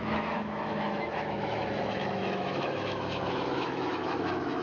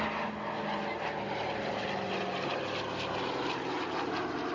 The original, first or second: second